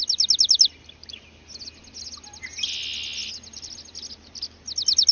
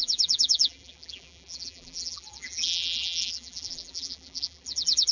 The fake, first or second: second